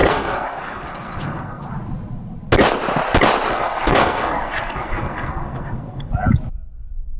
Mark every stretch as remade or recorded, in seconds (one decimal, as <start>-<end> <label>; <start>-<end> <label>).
0.0-1.7 remade; 1.7-3.5 recorded; 3.5-6.1 remade; 6.1-7.2 recorded